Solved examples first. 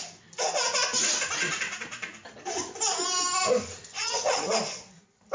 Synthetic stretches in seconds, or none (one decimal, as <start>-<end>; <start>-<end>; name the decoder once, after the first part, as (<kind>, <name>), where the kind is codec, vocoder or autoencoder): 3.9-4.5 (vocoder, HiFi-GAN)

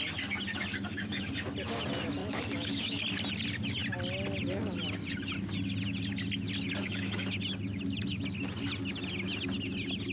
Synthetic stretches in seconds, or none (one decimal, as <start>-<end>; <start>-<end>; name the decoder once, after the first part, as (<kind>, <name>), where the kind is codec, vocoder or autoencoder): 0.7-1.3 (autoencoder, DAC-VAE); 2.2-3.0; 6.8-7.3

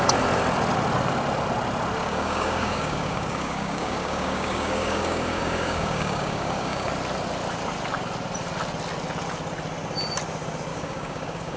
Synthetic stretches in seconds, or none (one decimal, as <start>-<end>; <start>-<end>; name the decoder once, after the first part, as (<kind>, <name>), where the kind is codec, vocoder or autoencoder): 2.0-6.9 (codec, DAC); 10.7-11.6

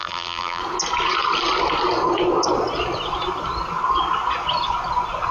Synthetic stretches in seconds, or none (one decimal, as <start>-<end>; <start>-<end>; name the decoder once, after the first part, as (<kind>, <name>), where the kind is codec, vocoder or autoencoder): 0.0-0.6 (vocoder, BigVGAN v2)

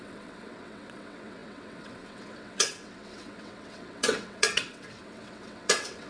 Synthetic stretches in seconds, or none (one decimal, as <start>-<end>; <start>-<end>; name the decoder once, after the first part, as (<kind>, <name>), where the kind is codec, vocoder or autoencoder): 0.0-6.1 (vocoder, WaveNeXt)

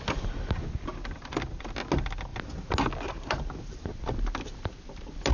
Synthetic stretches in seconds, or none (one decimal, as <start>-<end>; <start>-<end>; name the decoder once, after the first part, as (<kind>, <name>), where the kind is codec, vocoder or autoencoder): none

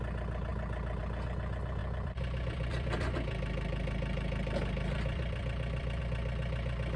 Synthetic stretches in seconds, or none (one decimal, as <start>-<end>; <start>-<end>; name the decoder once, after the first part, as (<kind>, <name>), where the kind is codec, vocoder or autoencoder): 0.5-1.0 (vocoder, BigVGAN v2); 1.8-6.0